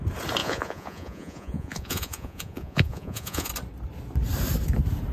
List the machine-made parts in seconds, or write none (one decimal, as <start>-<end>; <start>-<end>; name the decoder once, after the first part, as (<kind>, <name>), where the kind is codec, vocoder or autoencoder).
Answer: 0.4-3.5 (vocoder, Vocos)